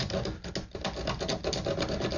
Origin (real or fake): real